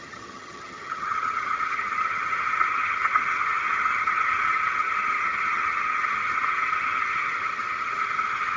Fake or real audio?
fake